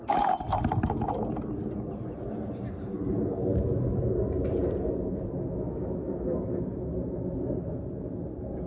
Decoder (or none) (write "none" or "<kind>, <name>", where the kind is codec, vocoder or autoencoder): none